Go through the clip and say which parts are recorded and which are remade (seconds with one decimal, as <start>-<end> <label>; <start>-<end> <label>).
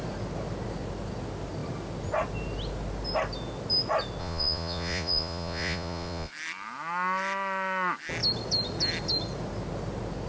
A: 0.0-4.2 recorded; 4.2-6.3 remade; 6.3-10.3 recorded